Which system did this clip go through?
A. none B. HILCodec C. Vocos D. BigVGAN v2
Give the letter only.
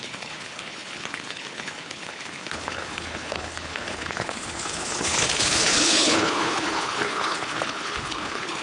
B